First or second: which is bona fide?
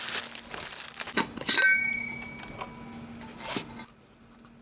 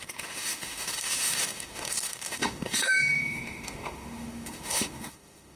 first